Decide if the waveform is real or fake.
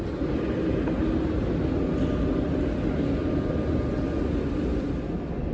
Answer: real